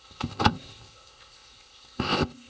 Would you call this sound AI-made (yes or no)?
yes